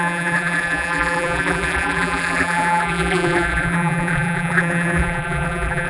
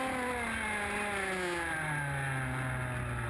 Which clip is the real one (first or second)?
second